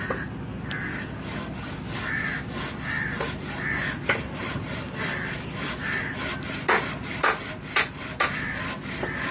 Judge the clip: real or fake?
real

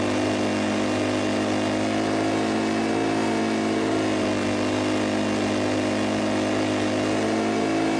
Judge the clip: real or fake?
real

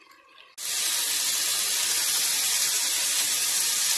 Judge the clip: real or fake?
real